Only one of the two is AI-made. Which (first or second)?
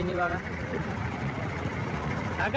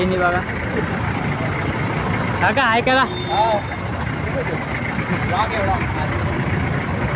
first